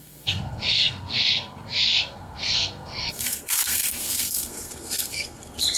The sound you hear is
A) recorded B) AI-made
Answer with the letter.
B